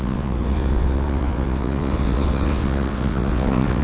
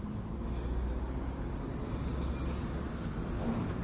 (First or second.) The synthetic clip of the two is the first